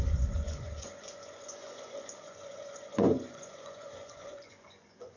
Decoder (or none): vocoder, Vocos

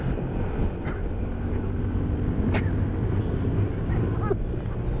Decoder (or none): none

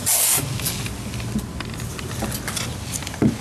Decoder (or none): none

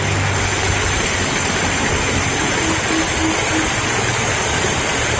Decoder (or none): none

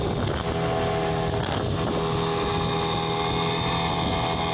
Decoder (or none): none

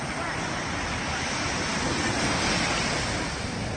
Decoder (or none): none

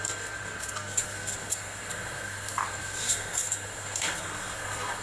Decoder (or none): codec, SNAC